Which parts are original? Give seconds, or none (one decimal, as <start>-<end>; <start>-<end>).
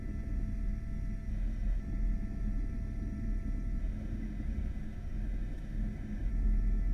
0.0-1.3; 1.8-3.8; 6.3-6.9